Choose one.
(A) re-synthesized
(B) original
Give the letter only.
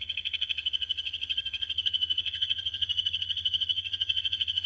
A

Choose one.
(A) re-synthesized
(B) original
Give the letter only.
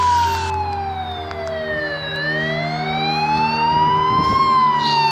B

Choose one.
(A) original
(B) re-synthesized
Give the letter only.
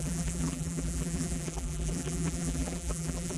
B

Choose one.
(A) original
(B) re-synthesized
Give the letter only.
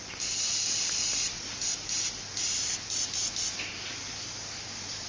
A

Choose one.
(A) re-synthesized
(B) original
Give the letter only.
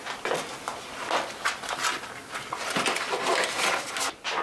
B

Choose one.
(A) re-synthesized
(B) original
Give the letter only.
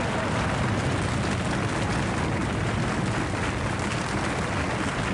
B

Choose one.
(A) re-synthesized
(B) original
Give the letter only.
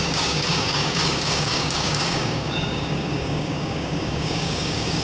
A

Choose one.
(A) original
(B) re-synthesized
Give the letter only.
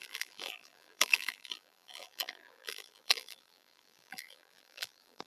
B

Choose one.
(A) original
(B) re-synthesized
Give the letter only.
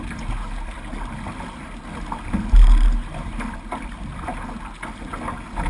A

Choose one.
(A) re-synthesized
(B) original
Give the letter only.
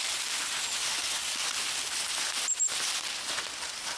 A